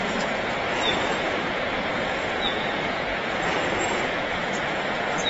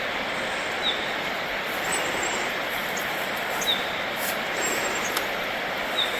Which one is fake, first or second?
first